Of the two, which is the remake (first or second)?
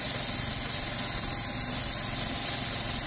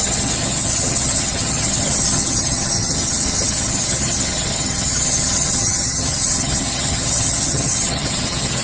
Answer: second